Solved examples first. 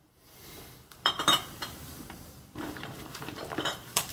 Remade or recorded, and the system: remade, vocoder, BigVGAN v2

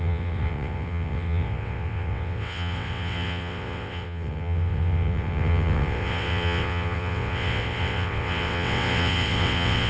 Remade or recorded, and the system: remade, vocoder, WaveNeXt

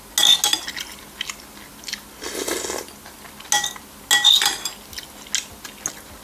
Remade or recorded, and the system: recorded